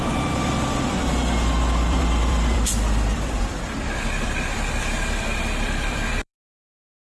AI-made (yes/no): yes